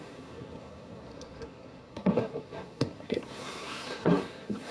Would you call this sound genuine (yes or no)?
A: no